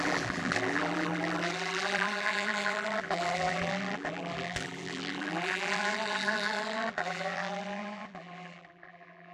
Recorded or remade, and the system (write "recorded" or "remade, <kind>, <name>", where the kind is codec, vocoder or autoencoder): remade, vocoder, BigVGAN v2